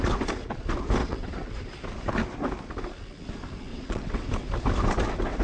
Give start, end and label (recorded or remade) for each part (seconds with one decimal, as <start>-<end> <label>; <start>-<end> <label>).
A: 0.0-1.0 recorded; 1.0-1.5 remade; 1.5-3.7 recorded; 3.7-4.3 remade; 4.3-5.4 recorded

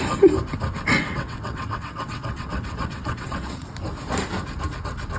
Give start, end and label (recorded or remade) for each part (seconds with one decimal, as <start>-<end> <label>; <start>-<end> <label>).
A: 0.0-0.9 recorded; 0.9-3.7 remade; 3.7-5.2 recorded

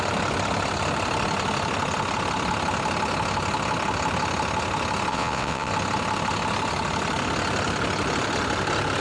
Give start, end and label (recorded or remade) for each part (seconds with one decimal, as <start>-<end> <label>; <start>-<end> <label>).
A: 0.0-5.1 recorded; 5.1-5.7 remade; 5.7-9.0 recorded

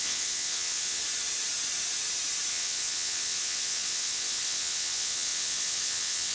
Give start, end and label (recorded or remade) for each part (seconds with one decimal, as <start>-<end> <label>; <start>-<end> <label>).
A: 0.0-1.0 remade; 1.0-2.5 recorded; 2.5-6.3 remade

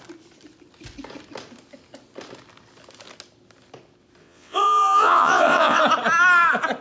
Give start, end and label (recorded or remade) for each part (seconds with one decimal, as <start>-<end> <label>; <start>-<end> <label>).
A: 0.0-4.2 recorded; 4.2-5.8 remade; 5.8-6.8 recorded

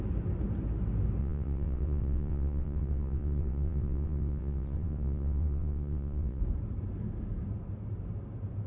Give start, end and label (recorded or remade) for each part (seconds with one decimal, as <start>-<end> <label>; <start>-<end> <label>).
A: 0.0-1.2 recorded; 1.2-6.4 remade; 6.4-8.7 recorded

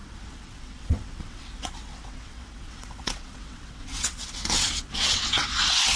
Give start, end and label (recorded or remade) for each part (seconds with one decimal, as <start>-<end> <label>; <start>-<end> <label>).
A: 0.0-6.0 remade

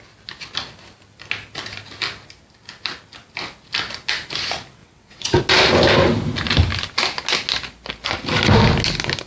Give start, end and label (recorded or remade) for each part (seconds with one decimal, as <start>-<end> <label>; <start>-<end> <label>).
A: 0.0-4.8 recorded; 4.8-5.4 remade; 5.4-9.3 recorded